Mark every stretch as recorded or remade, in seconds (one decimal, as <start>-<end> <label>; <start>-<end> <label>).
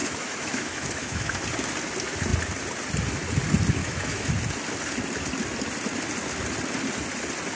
0.0-1.3 remade; 1.3-3.8 recorded; 3.8-4.3 remade; 4.3-7.6 recorded